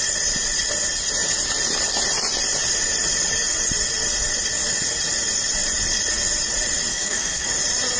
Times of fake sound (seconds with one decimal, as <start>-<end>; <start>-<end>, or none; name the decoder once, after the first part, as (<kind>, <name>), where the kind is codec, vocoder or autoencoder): 6.9-7.5 (codec, SNAC)